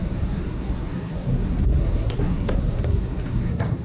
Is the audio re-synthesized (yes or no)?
yes